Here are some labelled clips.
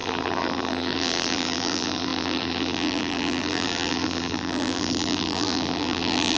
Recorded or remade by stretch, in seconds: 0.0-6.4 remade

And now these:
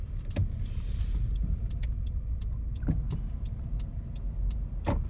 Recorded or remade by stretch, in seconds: 0.0-0.4 remade; 0.4-3.5 recorded; 3.5-5.1 remade